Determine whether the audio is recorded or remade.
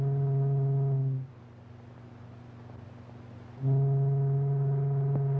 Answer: recorded